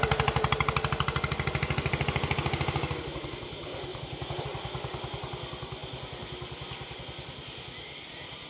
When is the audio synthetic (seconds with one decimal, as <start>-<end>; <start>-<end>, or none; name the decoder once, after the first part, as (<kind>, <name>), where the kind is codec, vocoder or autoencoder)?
3.9-4.4 (vocoder, BigVGAN v2)

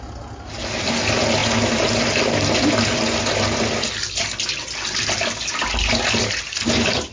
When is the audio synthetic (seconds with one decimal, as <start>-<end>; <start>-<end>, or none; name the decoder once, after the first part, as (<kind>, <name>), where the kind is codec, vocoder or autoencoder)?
none

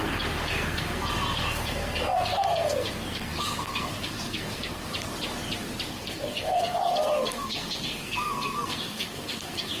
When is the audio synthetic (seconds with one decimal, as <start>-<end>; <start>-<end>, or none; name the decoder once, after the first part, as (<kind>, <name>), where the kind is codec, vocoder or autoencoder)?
0.0-4.9 (codec, SNAC); 5.9-9.8

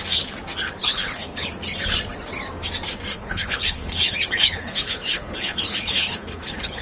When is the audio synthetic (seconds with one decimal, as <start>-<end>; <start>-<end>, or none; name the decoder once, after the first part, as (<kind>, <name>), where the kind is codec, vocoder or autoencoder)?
0.8-1.5 (codec, HILCodec); 3.1-6.8

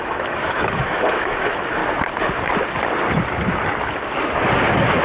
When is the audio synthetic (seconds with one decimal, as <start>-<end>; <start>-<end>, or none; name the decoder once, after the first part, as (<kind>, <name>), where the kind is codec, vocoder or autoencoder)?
0.0-1.8 (autoencoder, DAC-VAE)

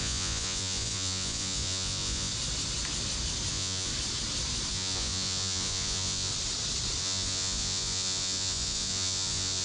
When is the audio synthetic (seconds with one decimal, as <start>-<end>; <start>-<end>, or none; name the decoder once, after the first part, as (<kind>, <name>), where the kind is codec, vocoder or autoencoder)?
0.0-2.3 (vocoder, Vocos); 3.5-3.9; 4.7-6.3; 7.0-9.6